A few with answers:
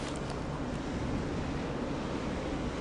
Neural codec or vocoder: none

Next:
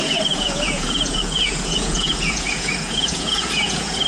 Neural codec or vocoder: vocoder, Vocos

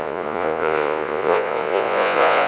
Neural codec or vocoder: vocoder, Vocos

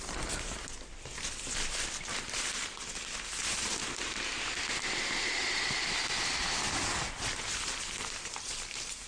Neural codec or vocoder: none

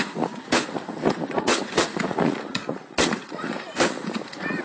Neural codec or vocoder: vocoder, Vocos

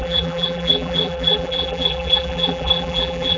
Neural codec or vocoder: vocoder, BigVGAN v2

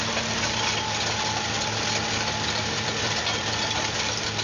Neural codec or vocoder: vocoder, BigVGAN v2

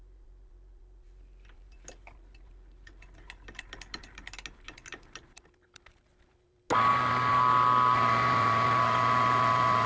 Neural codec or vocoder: none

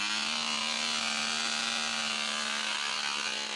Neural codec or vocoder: none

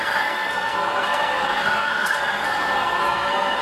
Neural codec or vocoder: codec, SNAC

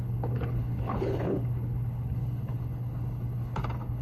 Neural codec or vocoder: codec, HILCodec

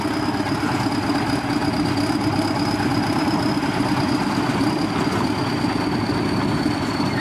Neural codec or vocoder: none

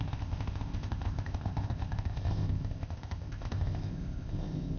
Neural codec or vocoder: codec, ZipCodec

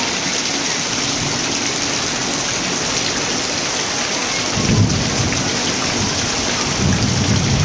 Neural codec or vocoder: none